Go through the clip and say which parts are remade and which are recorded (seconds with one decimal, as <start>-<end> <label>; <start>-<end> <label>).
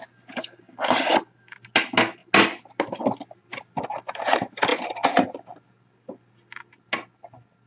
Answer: 0.0-4.7 recorded; 4.7-5.6 remade; 5.6-7.7 recorded